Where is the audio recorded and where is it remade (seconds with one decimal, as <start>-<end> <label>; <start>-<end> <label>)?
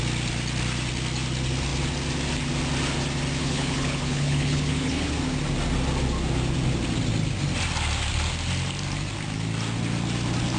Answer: 0.0-3.4 recorded; 3.4-5.1 remade; 5.1-10.6 recorded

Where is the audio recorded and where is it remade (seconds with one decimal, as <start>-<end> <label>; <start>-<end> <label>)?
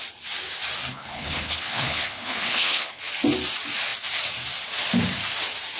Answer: 0.0-0.9 recorded; 0.9-3.0 remade; 3.0-5.8 recorded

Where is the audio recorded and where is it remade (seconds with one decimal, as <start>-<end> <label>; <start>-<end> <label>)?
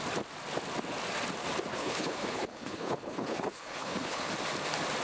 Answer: 0.0-1.7 recorded; 1.7-4.3 remade; 4.3-5.0 recorded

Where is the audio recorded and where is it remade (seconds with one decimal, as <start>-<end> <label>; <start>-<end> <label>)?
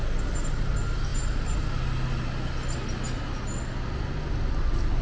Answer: 0.0-5.0 recorded